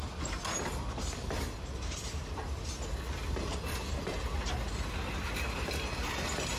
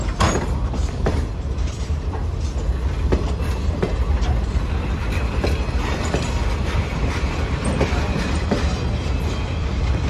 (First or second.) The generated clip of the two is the second